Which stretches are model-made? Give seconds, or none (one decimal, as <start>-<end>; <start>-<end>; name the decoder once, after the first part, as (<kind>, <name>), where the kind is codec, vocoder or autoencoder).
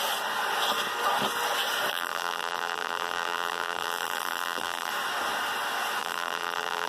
1.9-4.9 (vocoder, BigVGAN v2); 6.0-6.9